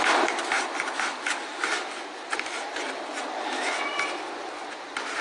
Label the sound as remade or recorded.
recorded